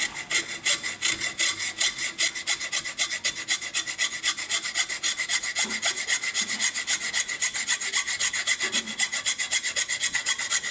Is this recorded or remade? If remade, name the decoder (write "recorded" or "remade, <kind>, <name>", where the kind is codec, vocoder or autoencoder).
recorded